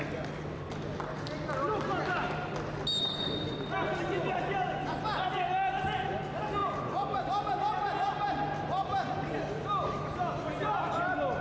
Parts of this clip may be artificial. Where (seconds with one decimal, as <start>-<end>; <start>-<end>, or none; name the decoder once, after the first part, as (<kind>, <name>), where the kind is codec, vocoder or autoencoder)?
none